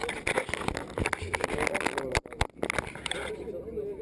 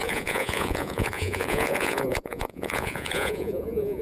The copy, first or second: second